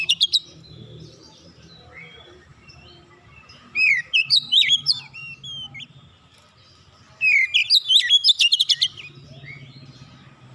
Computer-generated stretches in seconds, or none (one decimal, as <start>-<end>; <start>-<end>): 0.0-5.2